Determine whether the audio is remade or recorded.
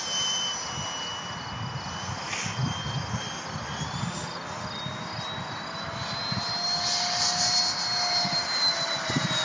recorded